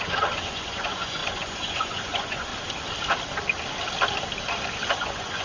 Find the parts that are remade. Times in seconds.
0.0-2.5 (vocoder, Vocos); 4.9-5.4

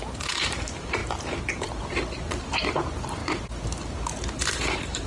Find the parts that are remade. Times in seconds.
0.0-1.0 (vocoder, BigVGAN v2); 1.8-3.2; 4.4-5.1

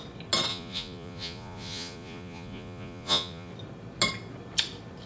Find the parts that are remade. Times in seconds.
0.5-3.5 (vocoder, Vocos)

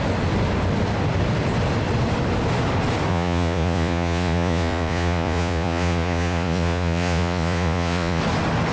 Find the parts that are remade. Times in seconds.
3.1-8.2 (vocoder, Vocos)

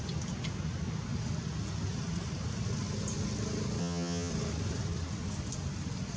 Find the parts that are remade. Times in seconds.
3.8-4.3 (vocoder, HiFi-GAN)

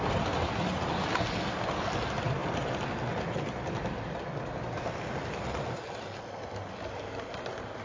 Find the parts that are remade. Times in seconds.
none